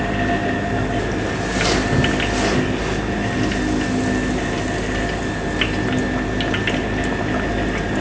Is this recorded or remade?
recorded